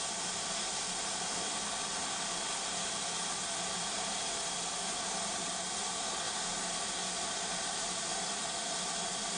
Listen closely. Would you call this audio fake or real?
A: real